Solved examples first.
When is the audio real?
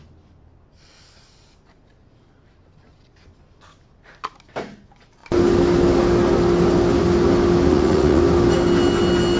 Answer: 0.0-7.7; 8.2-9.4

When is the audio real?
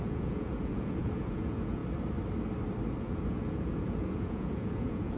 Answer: 1.8-3.0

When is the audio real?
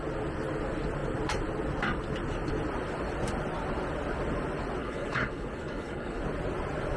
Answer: 0.0-4.8; 6.2-7.0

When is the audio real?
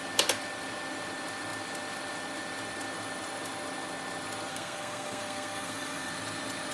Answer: 0.0-4.5; 6.1-6.7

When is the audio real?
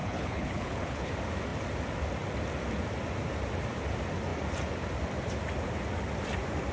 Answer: 1.1-6.7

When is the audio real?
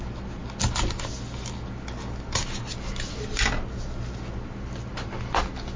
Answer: 0.0-5.8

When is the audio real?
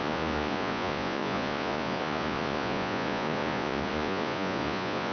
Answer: none